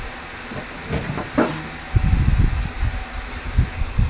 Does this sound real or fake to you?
real